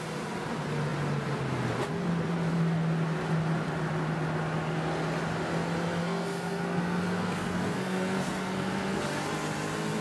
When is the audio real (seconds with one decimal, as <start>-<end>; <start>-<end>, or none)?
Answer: 0.0-6.0; 9.0-10.0